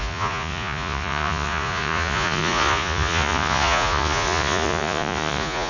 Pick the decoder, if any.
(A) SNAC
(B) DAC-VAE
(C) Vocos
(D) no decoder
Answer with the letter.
C